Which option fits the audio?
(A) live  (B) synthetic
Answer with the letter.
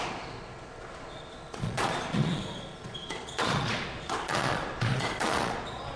B